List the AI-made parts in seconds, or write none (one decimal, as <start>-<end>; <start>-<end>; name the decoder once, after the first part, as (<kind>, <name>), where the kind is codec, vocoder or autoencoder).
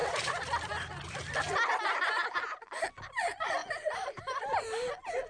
none